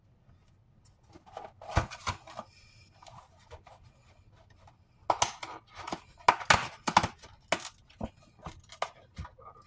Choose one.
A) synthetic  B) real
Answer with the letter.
B